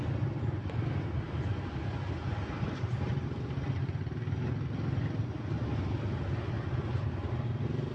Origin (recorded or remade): recorded